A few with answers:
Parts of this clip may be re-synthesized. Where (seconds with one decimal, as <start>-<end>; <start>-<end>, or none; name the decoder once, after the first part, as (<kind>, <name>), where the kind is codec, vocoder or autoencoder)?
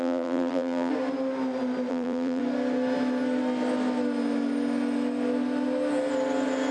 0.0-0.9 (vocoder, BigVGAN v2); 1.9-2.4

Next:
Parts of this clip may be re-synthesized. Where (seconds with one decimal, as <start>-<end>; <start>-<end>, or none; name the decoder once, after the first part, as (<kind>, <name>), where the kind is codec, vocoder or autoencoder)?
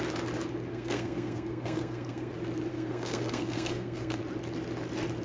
0.7-2.3 (codec, SNAC); 2.7-4.2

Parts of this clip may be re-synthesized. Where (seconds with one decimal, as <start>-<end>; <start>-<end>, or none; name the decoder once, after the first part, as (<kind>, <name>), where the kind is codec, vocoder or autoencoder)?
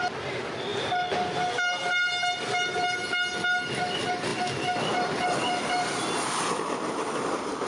none